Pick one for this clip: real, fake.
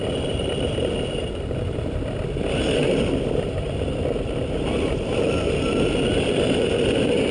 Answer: real